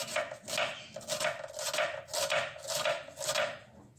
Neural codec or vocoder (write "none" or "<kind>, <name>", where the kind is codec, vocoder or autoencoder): none